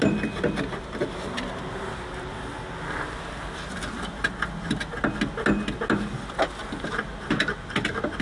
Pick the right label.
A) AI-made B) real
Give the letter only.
B